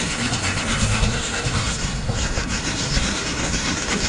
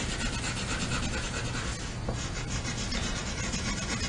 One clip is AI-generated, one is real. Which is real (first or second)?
second